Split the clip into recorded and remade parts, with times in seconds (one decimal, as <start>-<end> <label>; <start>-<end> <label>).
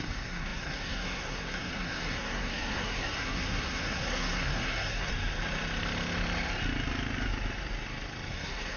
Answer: 0.0-5.1 remade; 5.1-8.3 recorded; 8.3-8.8 remade